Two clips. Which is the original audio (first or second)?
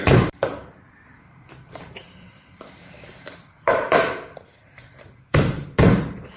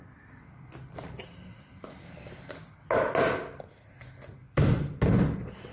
second